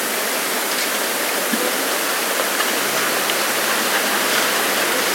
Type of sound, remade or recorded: recorded